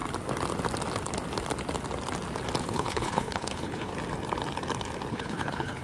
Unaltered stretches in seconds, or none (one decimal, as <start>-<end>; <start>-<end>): 0.0-2.6; 3.9-5.1